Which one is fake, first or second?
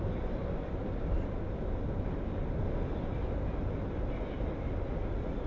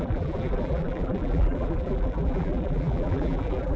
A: second